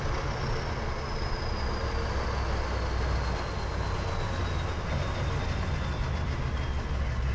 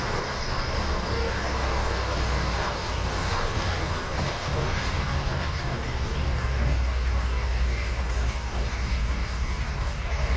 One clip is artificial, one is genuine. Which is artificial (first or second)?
second